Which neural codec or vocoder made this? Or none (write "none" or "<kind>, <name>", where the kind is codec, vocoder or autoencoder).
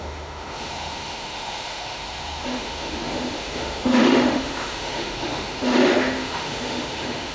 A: autoencoder, DAC-VAE